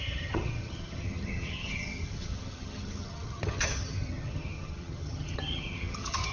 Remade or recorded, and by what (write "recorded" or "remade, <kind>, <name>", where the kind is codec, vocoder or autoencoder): remade, vocoder, HiFi-GAN